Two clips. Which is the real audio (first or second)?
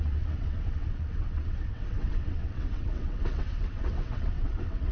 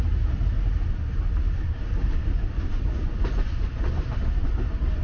second